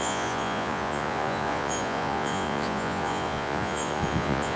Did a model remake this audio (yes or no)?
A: yes